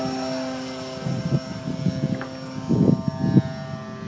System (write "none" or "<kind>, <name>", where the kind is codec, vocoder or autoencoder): none